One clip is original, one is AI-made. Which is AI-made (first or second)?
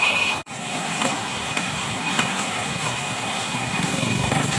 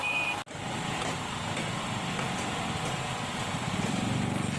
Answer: first